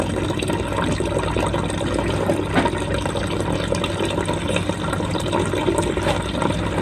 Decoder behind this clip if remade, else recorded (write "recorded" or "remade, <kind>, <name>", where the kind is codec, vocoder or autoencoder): recorded